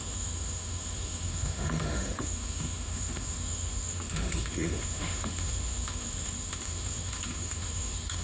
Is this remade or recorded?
remade